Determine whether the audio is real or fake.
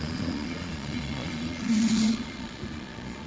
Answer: fake